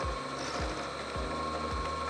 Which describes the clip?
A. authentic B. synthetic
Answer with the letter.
A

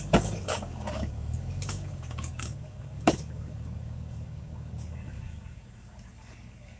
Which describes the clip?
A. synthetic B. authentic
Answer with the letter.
A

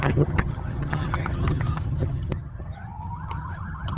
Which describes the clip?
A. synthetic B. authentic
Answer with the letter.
A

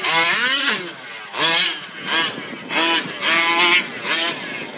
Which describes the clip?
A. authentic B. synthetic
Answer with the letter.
A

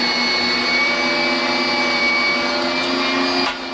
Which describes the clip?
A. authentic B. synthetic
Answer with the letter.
A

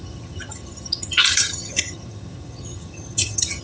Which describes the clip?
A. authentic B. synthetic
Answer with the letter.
B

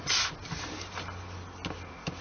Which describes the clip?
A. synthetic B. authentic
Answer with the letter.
B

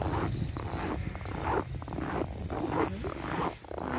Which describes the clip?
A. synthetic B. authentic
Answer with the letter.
B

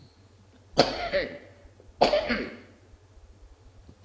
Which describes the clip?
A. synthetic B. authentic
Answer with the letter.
B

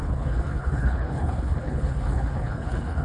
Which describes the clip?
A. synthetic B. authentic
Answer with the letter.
A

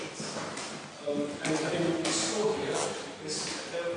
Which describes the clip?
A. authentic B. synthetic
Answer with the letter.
A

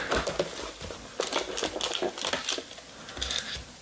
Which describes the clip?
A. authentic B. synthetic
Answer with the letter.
A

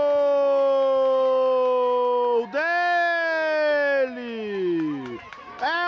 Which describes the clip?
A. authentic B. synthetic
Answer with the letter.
A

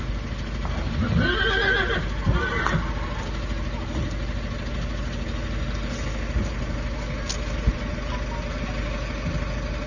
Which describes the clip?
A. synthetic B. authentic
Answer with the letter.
B